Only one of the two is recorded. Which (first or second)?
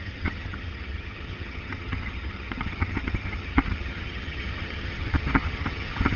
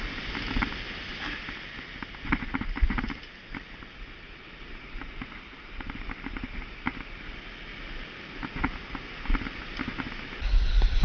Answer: second